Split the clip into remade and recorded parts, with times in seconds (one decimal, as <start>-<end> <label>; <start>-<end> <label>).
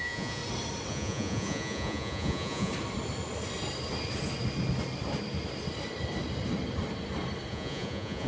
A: 0.0-0.4 remade; 0.4-0.9 recorded; 0.9-2.7 remade; 2.7-7.5 recorded; 7.5-8.3 remade